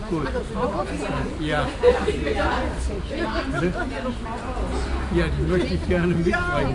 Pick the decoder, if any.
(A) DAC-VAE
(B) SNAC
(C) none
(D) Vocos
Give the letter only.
C